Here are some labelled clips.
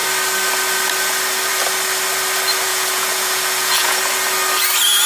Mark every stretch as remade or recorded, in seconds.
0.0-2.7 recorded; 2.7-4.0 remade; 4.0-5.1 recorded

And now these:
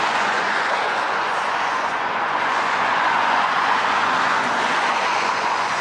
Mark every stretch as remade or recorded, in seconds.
0.0-5.8 remade

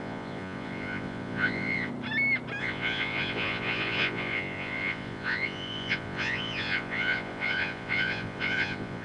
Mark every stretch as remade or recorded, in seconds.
0.0-1.9 remade; 1.9-2.6 recorded; 2.6-9.0 remade

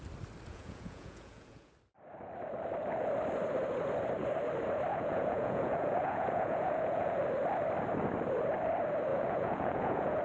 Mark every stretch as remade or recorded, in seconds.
0.0-0.5 recorded; 0.5-1.7 remade; 1.7-4.9 recorded; 4.9-7.2 remade; 7.2-9.1 recorded; 9.1-10.2 remade

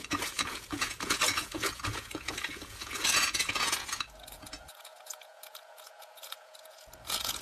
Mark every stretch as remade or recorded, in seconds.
0.0-7.4 remade

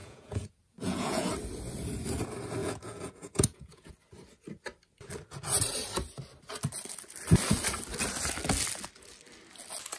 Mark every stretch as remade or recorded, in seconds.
0.0-1.3 remade; 1.3-2.6 recorded; 2.6-3.9 remade; 3.9-10.0 recorded

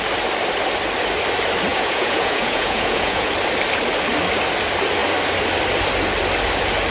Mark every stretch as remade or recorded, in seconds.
0.0-1.7 recorded; 1.7-3.3 remade; 3.3-6.9 recorded

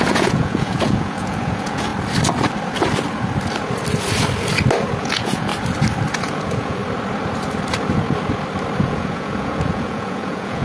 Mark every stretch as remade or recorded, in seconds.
0.0-1.9 remade; 1.9-5.0 recorded; 5.0-5.5 remade; 5.5-6.2 recorded; 6.2-6.8 remade; 6.8-8.8 recorded; 8.8-10.6 remade